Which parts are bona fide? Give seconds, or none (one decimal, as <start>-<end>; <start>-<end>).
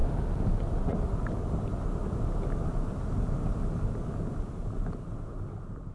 0.0-5.9